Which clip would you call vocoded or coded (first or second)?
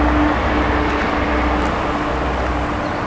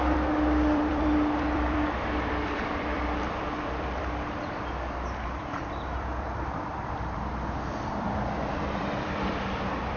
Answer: second